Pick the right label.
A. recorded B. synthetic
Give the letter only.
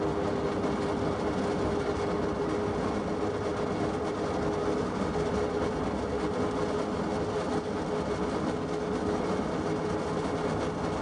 A